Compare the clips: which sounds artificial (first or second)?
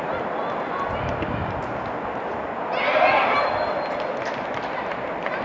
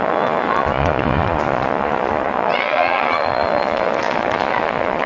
second